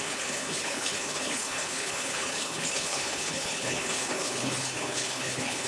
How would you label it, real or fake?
fake